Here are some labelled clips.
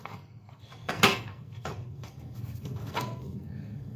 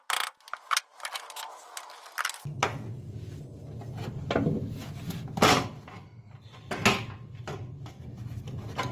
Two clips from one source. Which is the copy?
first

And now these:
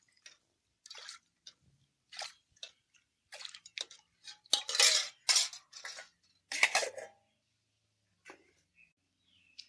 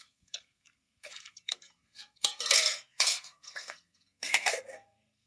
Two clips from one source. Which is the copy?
second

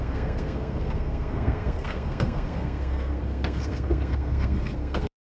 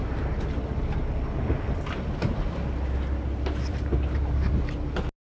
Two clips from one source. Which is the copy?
first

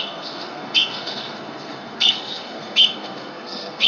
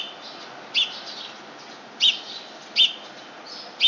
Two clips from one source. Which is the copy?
first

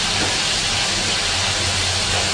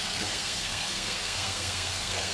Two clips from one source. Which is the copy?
second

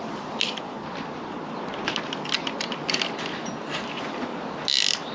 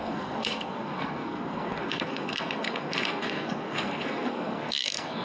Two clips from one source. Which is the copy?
second